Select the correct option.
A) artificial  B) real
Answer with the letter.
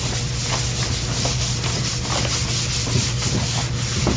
B